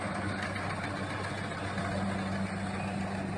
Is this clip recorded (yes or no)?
yes